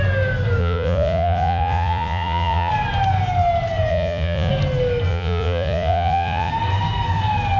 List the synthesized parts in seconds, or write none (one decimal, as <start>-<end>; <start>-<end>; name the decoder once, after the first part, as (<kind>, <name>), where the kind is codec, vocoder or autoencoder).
0.6-2.7 (vocoder, Vocos); 3.9-4.5; 5.1-6.5